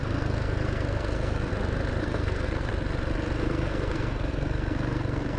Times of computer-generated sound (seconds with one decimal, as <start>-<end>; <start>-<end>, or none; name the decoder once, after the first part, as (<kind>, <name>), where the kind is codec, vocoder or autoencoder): 0.0-1.5 (codec, SNAC); 2.0-2.7; 3.4-5.4